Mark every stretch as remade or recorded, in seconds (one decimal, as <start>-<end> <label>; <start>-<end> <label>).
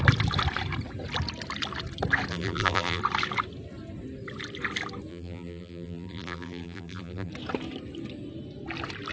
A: 0.0-2.3 recorded; 2.3-3.0 remade; 3.0-5.1 recorded; 5.1-7.3 remade; 7.3-9.1 recorded